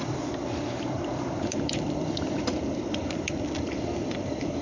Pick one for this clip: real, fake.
fake